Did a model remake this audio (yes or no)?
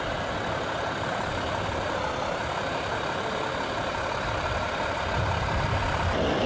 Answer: no